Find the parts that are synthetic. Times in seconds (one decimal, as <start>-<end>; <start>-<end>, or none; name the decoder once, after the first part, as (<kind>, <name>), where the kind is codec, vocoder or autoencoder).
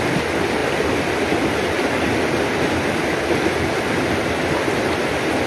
none